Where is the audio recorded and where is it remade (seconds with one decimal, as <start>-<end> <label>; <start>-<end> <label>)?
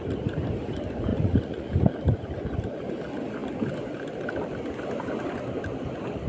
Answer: 0.0-1.1 recorded; 1.1-1.7 remade; 1.7-6.3 recorded